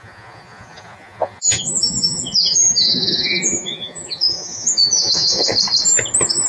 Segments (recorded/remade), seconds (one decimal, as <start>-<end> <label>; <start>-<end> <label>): 0.0-5.5 remade; 5.5-6.5 recorded